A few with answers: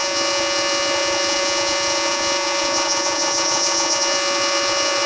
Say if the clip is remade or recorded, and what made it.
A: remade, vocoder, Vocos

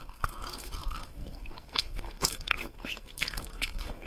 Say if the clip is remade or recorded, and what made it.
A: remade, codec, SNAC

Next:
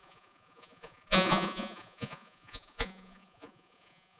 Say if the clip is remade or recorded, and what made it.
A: remade, vocoder, Vocos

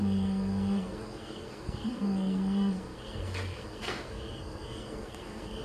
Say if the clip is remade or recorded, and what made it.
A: remade, codec, SNAC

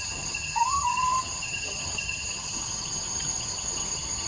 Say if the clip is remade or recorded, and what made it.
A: remade, vocoder, HiFi-GAN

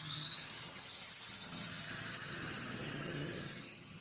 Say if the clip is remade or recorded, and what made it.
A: remade, vocoder, HiFi-GAN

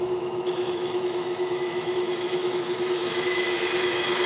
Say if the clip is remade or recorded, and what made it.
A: remade, autoencoder, DAC-VAE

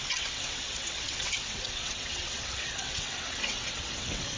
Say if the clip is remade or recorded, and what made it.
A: remade, vocoder, WaveNeXt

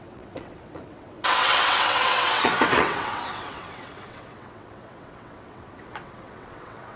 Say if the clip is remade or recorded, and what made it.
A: remade, vocoder, WaveNeXt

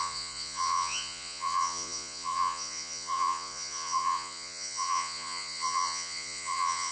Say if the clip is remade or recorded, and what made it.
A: remade, vocoder, Vocos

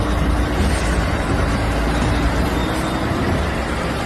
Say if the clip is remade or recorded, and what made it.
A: recorded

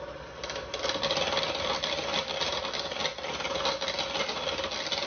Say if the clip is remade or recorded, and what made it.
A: recorded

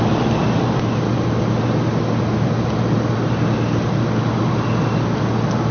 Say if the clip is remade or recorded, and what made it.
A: recorded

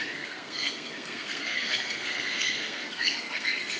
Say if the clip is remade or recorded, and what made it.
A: remade, codec, SNAC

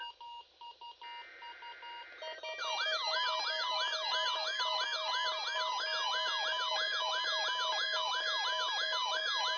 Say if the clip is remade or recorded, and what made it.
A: recorded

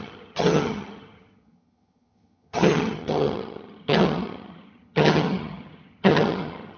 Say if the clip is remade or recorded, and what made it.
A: remade, vocoder, HiFi-GAN